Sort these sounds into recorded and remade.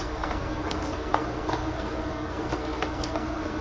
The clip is remade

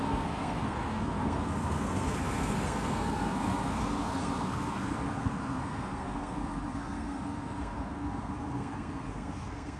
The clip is remade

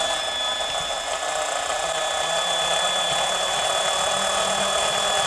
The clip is recorded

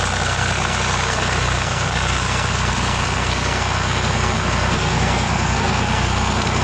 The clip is remade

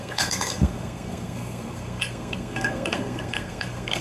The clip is remade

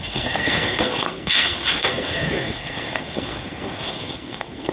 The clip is remade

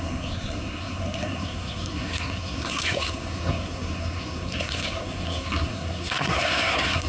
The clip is remade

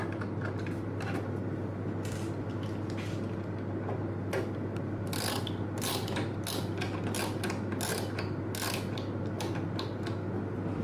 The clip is recorded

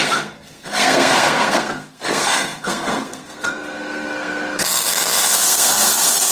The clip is remade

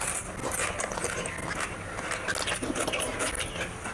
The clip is recorded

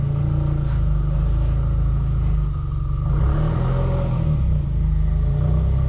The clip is recorded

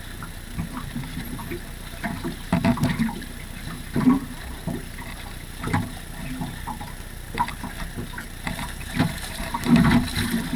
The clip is recorded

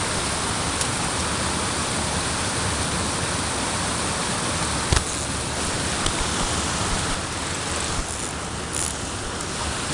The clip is recorded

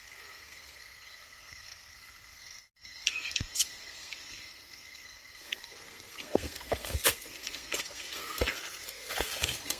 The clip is remade